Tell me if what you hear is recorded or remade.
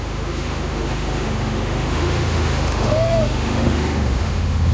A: remade